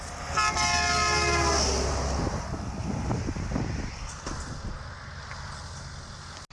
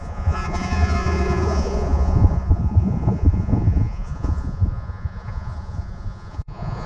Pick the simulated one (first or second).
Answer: second